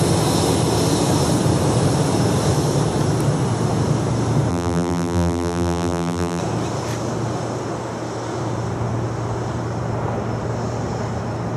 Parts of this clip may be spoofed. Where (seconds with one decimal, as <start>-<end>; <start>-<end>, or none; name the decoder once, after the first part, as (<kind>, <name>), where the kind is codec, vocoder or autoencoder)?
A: 4.5-6.4 (vocoder, BigVGAN v2)